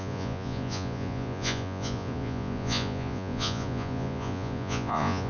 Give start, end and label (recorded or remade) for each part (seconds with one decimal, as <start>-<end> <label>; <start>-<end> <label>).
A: 0.0-5.3 remade